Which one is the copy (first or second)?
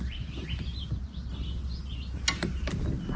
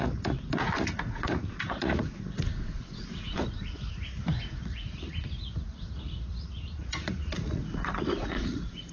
second